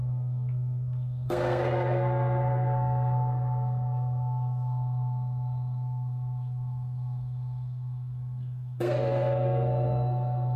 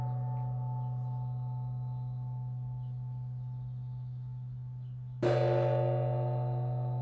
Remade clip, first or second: first